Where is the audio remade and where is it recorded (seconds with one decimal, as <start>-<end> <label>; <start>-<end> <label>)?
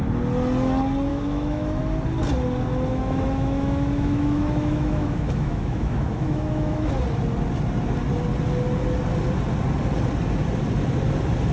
0.0-1.1 recorded; 1.1-1.8 remade; 1.8-2.9 recorded; 2.9-6.9 remade; 6.9-11.5 recorded